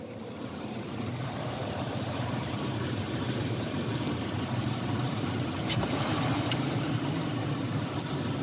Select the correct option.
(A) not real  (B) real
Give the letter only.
A